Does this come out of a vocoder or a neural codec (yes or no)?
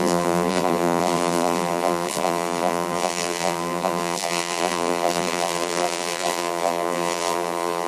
yes